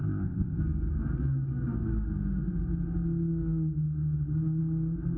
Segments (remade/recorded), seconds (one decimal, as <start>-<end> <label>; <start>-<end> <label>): 0.0-0.6 remade; 0.6-5.2 recorded